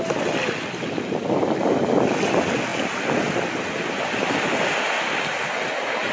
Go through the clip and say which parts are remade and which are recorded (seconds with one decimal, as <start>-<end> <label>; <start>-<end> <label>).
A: 0.0-6.1 recorded